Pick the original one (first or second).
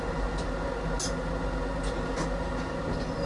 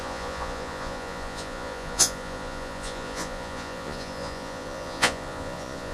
first